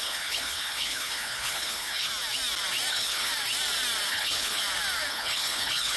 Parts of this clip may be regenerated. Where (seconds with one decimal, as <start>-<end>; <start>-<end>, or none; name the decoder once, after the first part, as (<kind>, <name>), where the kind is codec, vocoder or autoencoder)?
0.0-2.1 (codec, HILCodec); 2.9-3.3; 4.1-4.6; 5.1-6.0